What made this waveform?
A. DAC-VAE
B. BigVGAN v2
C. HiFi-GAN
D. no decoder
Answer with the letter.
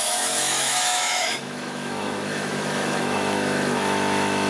A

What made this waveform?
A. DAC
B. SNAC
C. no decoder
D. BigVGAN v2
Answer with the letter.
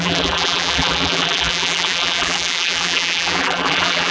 D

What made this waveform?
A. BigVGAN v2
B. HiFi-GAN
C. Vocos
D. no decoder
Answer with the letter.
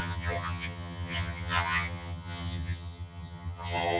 B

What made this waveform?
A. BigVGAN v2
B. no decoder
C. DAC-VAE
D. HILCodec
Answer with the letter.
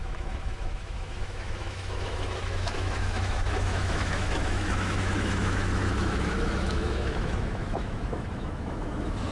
C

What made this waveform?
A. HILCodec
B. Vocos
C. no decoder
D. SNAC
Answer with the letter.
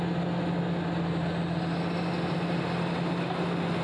C